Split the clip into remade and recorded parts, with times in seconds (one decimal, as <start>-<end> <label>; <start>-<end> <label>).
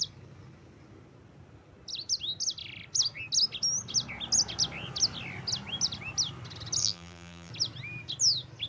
0.0-6.8 recorded; 6.8-7.5 remade; 7.5-8.7 recorded